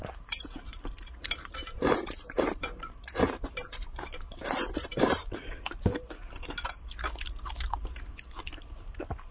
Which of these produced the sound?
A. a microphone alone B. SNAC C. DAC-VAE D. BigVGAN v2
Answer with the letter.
D